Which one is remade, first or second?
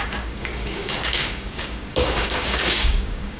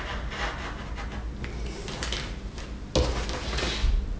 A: first